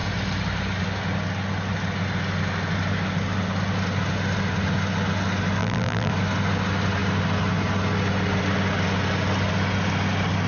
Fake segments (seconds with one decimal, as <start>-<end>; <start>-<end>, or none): 5.6-6.1